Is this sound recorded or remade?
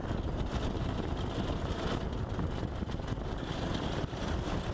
recorded